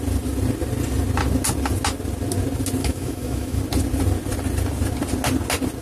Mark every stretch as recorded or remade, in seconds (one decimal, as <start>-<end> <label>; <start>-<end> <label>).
0.0-2.8 recorded; 2.8-3.6 remade; 3.6-5.8 recorded